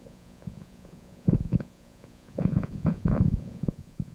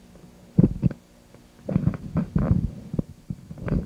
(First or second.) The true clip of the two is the second